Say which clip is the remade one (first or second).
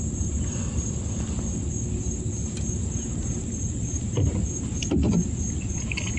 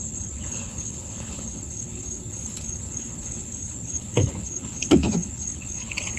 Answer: second